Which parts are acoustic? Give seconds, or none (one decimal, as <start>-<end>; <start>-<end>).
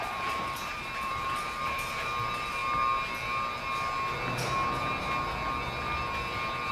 2.6-6.7